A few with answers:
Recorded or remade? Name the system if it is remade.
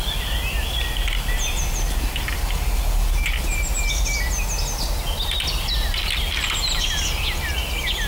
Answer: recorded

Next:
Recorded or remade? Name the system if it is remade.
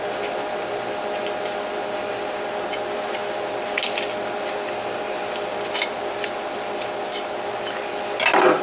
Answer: recorded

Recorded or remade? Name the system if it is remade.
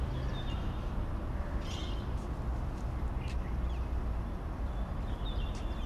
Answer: recorded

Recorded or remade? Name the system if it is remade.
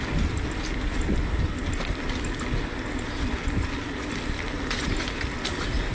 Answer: recorded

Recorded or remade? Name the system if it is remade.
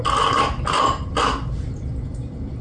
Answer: recorded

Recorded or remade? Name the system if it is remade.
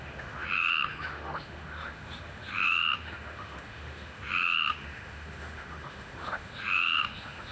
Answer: remade, autoencoder, DAC-VAE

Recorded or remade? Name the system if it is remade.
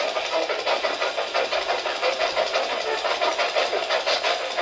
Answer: recorded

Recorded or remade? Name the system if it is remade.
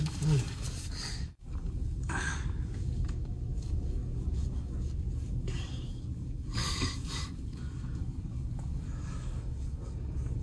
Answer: remade, codec, DAC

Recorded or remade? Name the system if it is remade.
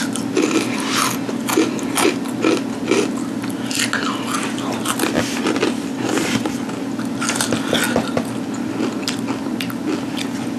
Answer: recorded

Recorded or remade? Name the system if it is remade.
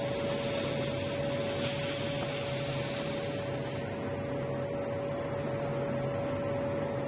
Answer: recorded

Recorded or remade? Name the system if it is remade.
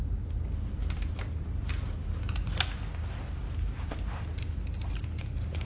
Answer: recorded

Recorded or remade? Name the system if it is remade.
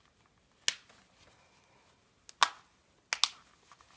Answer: recorded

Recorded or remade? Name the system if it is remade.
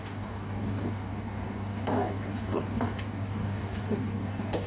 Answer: remade, codec, DAC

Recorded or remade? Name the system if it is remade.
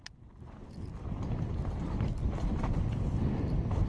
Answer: recorded